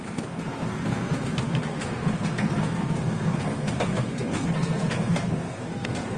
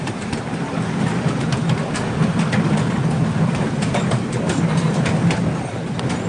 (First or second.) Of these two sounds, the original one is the second